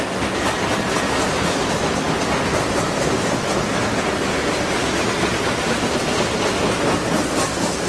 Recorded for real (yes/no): yes